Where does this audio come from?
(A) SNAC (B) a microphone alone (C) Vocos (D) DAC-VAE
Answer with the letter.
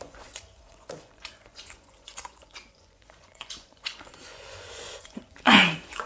C